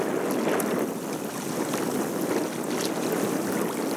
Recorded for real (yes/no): yes